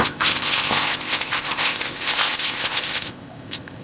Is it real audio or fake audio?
fake